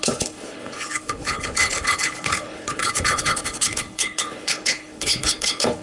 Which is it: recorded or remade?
remade